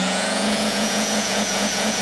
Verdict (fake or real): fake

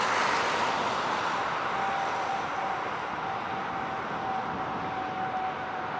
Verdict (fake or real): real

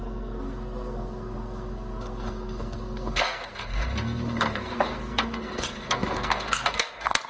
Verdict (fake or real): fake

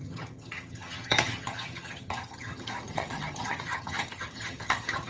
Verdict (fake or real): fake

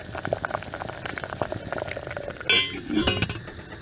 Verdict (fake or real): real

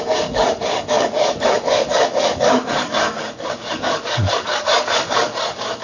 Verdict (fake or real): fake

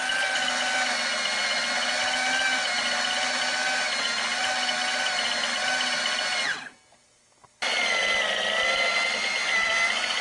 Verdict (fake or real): real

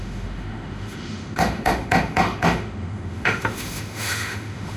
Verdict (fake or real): fake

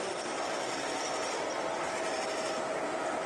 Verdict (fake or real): real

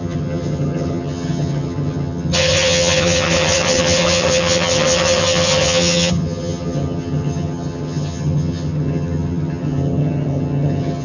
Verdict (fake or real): fake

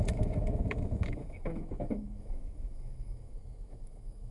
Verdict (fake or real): fake